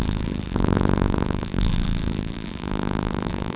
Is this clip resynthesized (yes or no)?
yes